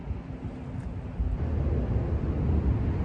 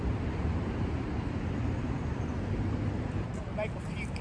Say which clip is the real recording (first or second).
first